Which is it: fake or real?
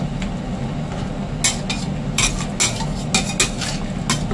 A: real